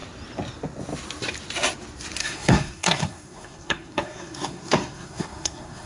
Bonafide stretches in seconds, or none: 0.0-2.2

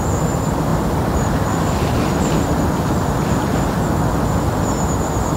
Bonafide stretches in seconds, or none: 0.0-5.4

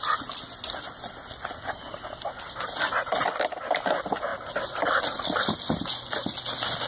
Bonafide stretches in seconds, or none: 0.0-6.9

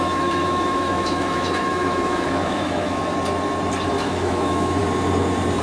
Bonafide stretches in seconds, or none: 3.0-3.9; 4.8-5.6

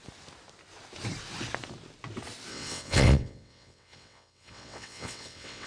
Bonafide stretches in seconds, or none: 0.0-2.5

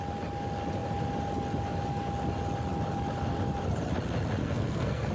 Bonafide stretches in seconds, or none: 0.0-4.4

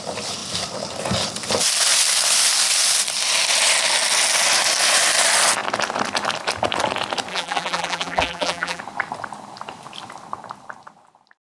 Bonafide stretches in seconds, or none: 0.0-7.3; 8.8-11.5

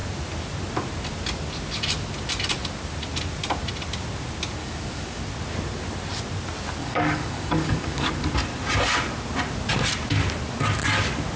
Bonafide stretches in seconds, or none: 0.0-4.6; 5.2-6.8; 8.1-11.4